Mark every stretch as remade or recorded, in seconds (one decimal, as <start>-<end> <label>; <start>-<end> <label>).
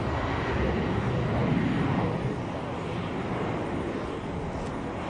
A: 0.0-5.1 recorded